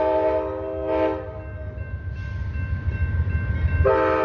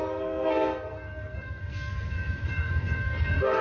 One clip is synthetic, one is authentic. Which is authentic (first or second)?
first